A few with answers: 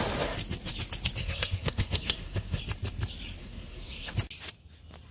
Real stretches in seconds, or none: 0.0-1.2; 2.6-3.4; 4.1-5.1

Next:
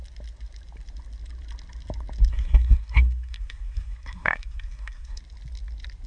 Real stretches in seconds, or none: 0.0-2.3; 5.2-6.1

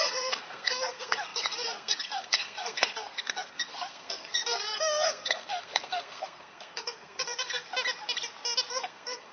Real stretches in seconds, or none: 7.7-8.7

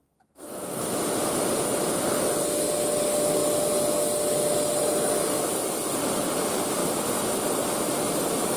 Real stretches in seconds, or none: 0.8-8.6